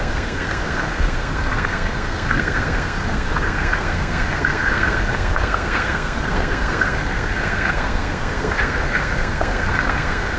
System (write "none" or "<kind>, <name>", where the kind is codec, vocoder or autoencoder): codec, SNAC